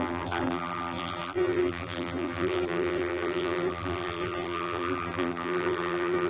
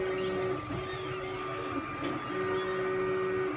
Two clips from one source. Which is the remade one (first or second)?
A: first